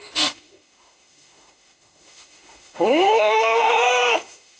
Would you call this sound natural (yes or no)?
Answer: no